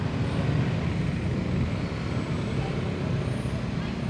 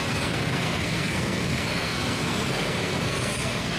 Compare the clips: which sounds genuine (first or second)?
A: first